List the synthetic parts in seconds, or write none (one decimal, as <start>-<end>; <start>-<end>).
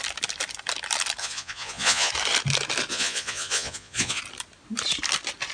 1.2-2.1; 2.9-4.2